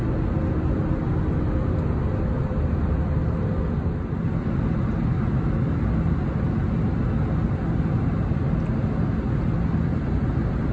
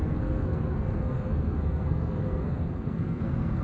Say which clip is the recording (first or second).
first